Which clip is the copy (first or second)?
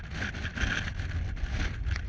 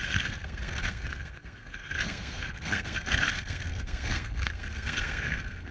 second